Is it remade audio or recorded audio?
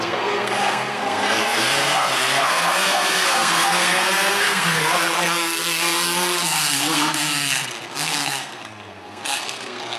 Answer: remade